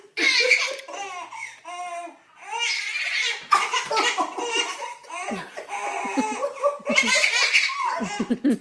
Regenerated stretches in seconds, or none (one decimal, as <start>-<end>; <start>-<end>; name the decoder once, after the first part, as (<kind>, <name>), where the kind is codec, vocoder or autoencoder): 3.1-7.6 (vocoder, BigVGAN v2)